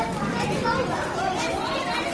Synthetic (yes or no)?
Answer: no